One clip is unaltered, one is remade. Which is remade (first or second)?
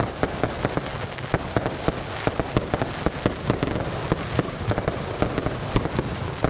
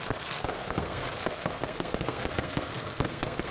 second